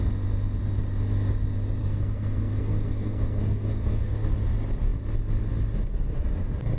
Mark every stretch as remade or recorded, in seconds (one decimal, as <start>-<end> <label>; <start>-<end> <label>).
0.0-1.8 recorded; 1.8-4.1 remade; 4.1-6.8 recorded